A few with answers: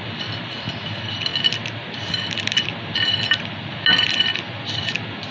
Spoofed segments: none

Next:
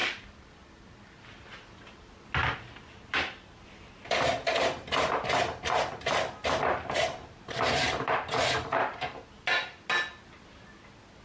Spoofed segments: 7.2-9.2 (vocoder, BigVGAN v2)

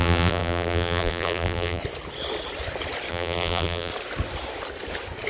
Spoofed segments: 0.0-1.8 (vocoder, BigVGAN v2); 3.1-3.9